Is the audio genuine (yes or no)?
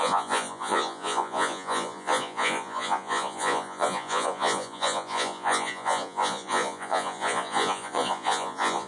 no